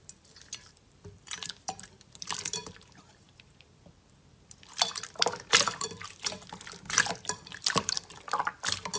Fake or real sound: fake